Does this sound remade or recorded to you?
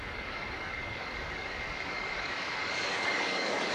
remade